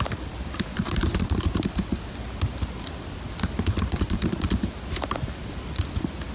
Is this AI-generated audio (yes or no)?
yes